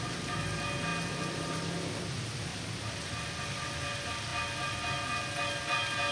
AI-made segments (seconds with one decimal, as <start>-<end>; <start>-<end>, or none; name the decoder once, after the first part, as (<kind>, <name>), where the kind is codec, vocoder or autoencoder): none